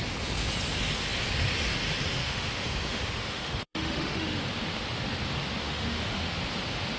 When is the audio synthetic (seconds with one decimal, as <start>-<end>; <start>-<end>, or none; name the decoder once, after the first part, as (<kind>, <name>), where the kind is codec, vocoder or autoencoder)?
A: 2.2-4.4 (autoencoder, DAC-VAE); 5.6-6.4